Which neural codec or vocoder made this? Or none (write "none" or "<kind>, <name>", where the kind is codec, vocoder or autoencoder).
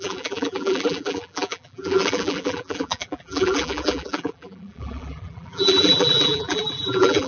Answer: vocoder, BigVGAN v2